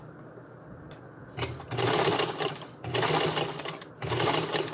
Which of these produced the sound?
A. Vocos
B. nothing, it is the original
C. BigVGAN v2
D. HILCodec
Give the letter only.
B